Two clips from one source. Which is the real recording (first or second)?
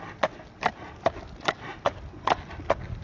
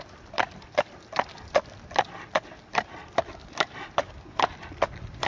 first